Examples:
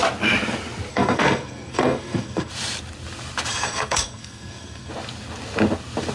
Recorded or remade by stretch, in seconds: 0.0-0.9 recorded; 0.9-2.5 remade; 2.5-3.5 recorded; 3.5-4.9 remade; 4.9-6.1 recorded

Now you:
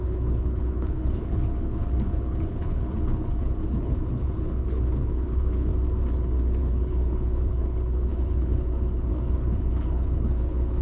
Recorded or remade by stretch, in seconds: 0.0-5.7 remade; 5.7-6.6 recorded; 6.6-10.8 remade

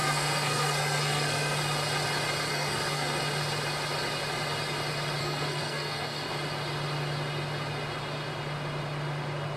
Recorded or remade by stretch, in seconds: 0.0-1.6 remade; 1.6-2.5 recorded; 2.5-3.2 remade; 3.2-5.2 recorded; 5.2-6.3 remade; 6.3-9.6 recorded

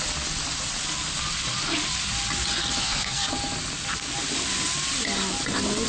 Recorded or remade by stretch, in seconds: 0.0-2.8 recorded; 2.8-3.3 remade; 3.3-5.9 recorded

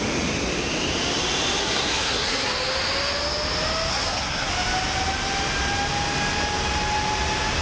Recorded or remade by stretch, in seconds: 0.0-1.6 recorded; 1.6-2.5 remade; 2.5-3.9 recorded; 3.9-4.5 remade; 4.5-7.6 recorded

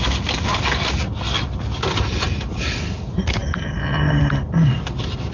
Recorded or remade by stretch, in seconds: 0.0-5.3 recorded